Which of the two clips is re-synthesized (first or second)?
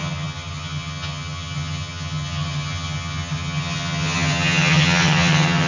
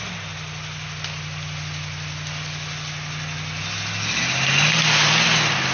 first